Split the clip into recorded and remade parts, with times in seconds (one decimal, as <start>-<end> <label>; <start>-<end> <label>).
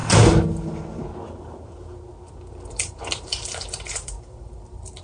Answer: 0.0-2.5 recorded; 2.5-5.0 remade